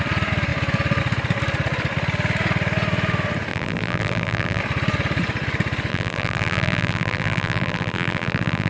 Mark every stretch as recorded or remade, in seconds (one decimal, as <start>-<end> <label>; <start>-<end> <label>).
0.0-3.5 recorded; 3.5-4.6 remade; 4.6-5.9 recorded; 5.9-8.7 remade